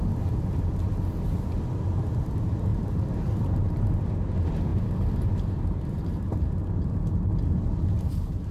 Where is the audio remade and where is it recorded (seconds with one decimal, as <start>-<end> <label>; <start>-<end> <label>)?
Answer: 0.0-2.7 recorded; 2.7-3.9 remade; 3.9-4.7 recorded; 4.7-6.6 remade; 6.6-8.5 recorded